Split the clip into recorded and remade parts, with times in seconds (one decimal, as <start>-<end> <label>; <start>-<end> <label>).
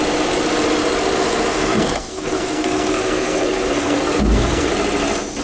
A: 0.0-1.5 recorded; 1.5-4.7 remade; 4.7-5.4 recorded